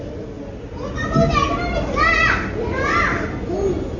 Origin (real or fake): real